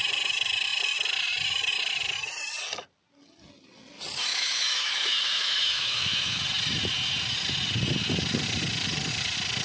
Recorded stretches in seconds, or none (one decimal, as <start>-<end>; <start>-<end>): 0.0-4.3; 6.4-9.6